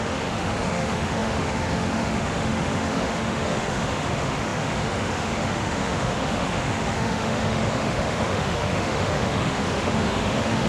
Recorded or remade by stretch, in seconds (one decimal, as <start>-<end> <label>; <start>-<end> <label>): 0.0-10.7 remade